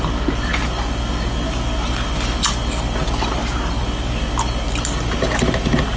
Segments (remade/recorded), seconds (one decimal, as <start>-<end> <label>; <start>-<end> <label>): 0.0-6.0 recorded